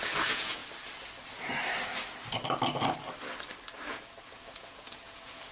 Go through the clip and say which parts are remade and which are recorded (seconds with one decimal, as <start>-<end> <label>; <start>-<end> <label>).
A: 0.0-0.6 remade; 0.6-3.9 recorded; 3.9-5.5 remade